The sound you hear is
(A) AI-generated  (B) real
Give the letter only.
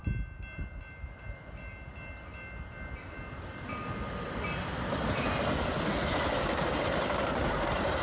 B